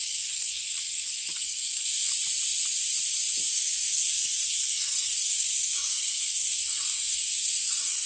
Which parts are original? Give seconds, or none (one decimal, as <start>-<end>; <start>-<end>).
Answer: 2.1-3.5